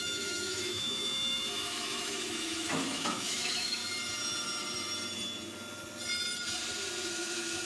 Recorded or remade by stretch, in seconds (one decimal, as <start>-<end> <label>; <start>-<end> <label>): 0.0-3.8 remade; 3.8-7.1 recorded; 7.1-7.6 remade